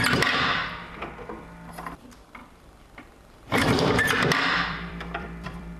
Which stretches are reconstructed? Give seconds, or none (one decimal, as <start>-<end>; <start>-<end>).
2.4-5.8